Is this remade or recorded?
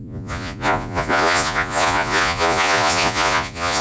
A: remade